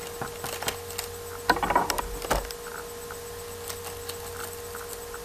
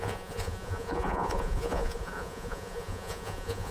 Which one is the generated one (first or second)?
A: second